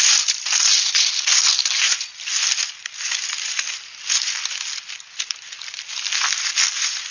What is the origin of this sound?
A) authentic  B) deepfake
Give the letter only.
A